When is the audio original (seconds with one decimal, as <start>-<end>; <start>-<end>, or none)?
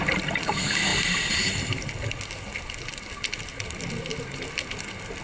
0.0-5.2